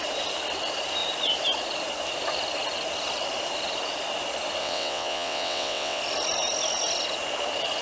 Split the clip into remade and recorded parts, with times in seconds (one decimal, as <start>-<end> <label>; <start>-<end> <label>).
0.0-4.6 recorded; 4.6-6.0 remade; 6.0-7.8 recorded